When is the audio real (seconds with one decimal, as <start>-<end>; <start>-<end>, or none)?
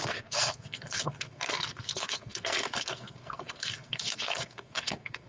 none